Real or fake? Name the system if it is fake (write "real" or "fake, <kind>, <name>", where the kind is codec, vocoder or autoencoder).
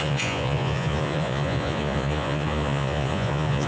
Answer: fake, vocoder, Vocos